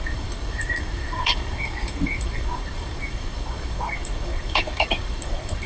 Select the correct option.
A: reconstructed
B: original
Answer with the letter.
A